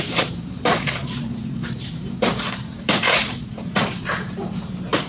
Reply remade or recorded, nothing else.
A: remade